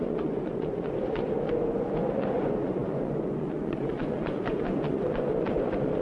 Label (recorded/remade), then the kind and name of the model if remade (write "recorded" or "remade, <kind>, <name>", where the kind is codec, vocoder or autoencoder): remade, vocoder, Vocos